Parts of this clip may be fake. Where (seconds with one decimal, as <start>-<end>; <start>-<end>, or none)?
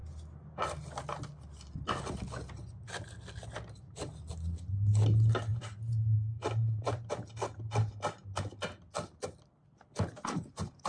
5.5-7.1